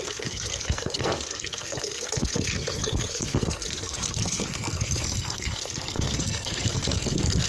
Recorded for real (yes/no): no